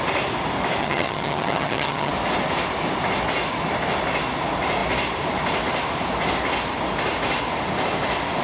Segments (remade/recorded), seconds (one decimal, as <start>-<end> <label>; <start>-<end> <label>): 0.0-0.8 recorded; 0.8-2.1 remade; 2.1-8.4 recorded